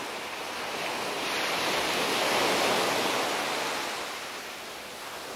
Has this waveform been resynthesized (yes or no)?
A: no